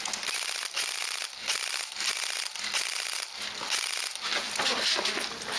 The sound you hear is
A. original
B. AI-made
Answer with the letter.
A